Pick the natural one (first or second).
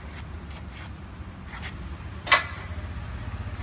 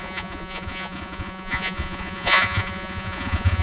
first